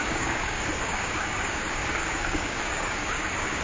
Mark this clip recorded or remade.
remade